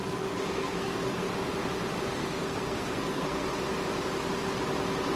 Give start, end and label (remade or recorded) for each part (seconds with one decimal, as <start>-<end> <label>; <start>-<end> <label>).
0.0-1.3 remade; 1.3-2.2 recorded; 2.2-3.6 remade; 3.6-5.2 recorded